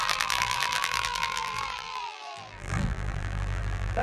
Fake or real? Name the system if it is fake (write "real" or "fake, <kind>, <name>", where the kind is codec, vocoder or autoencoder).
fake, vocoder, BigVGAN v2